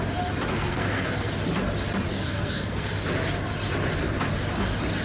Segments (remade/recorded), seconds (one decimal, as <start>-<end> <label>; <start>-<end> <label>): 0.0-0.5 recorded; 0.5-1.3 remade; 1.3-2.1 recorded; 2.1-2.9 remade; 2.9-5.0 recorded